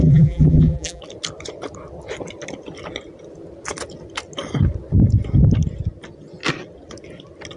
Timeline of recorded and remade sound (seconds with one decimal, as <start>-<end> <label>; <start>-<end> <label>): 0.0-1.0 remade; 1.0-7.6 recorded